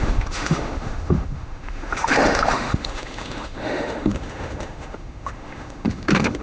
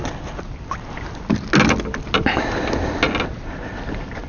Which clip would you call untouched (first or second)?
second